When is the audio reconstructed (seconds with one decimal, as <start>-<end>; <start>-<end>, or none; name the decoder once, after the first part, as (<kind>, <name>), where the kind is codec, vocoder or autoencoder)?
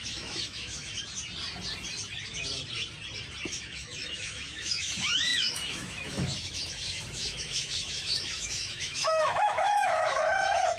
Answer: 0.0-0.9 (autoencoder, DAC-VAE); 3.5-10.8